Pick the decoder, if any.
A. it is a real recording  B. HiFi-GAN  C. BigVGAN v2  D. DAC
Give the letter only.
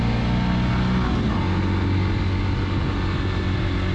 A